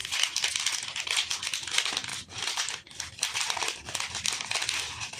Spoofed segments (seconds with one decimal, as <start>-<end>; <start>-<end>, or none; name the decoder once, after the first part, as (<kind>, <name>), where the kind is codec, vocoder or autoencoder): 0.0-0.9 (vocoder, BigVGAN v2); 2.1-5.2